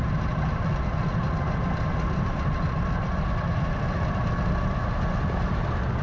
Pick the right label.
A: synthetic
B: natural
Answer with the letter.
B